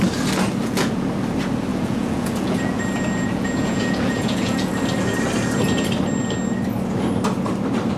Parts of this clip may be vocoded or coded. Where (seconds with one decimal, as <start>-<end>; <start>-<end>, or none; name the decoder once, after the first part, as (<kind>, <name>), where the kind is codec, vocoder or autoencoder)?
0.6-1.1 (vocoder, Vocos); 1.7-4.7